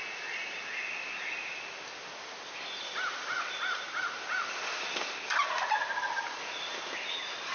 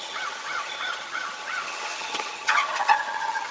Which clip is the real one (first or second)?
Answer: first